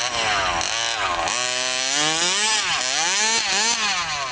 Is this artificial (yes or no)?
no